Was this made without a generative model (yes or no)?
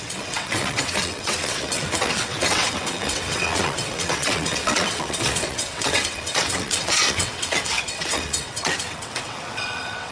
no